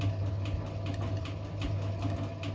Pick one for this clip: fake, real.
real